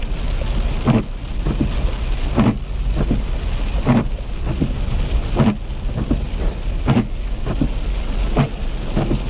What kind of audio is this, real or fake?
real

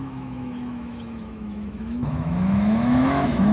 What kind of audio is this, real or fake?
fake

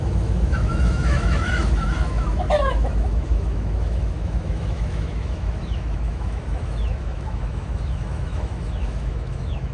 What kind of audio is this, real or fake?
fake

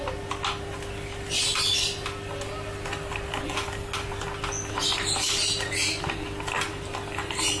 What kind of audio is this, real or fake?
real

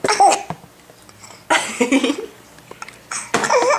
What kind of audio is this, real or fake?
real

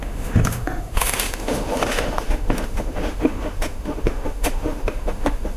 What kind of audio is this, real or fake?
fake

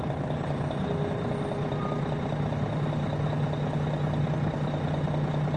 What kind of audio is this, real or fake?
real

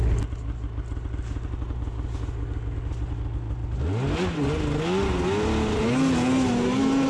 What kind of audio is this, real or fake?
real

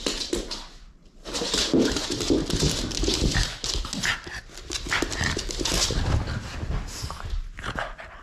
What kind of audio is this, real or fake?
real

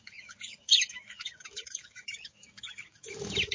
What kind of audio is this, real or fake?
fake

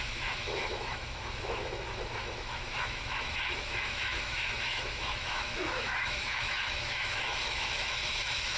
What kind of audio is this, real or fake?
fake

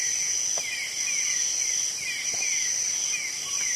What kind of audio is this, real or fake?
real